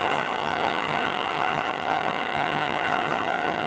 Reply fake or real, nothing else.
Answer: fake